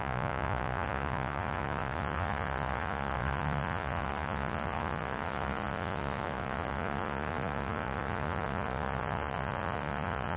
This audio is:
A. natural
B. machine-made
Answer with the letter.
B